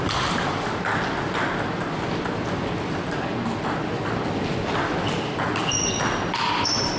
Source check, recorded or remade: recorded